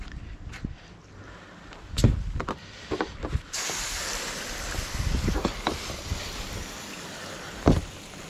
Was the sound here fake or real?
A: fake